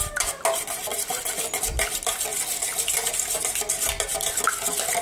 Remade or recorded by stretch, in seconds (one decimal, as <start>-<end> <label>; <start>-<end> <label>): 0.0-5.0 recorded

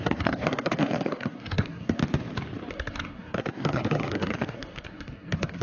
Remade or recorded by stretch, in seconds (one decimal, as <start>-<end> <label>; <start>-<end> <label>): 0.0-2.0 remade; 2.0-2.7 recorded; 2.7-5.6 remade

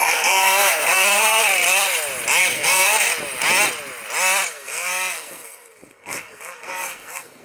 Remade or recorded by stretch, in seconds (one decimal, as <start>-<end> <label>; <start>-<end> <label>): 0.0-1.4 remade; 1.4-2.4 recorded; 2.4-3.1 remade; 3.1-4.5 recorded; 4.5-7.4 remade

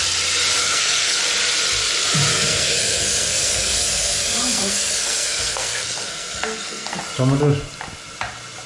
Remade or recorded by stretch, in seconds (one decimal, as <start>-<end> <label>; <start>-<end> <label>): 0.0-0.6 recorded; 0.6-1.2 remade; 1.2-2.3 recorded; 2.3-7.0 remade; 7.0-8.7 recorded

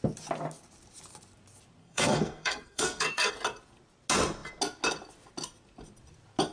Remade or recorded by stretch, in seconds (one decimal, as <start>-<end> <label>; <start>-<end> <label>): 0.0-1.8 recorded; 1.8-3.3 remade; 3.3-6.5 recorded

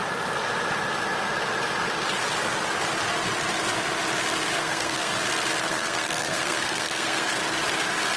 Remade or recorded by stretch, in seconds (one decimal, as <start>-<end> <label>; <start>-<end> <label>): 0.0-4.6 recorded; 4.6-5.1 remade; 5.1-5.6 recorded; 5.6-7.4 remade; 7.4-8.2 recorded